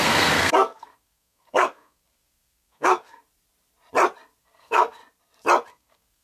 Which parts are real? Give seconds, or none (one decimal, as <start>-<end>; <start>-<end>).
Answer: 3.2-4.4; 5.0-5.7

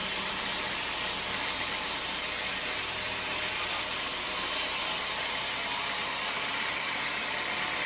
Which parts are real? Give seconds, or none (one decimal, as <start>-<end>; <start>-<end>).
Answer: 1.7-7.9

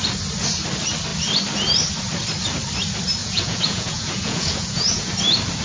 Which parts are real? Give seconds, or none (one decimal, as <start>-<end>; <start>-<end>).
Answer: 0.0-3.2; 5.0-5.6

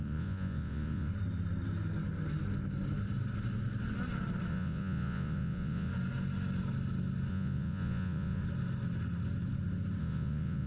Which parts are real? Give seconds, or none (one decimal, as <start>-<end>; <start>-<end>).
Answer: 1.1-4.5; 5.9-7.3; 8.4-10.0

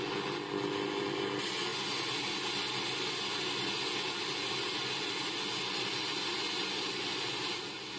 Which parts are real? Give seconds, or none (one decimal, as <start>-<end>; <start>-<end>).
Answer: 0.0-8.0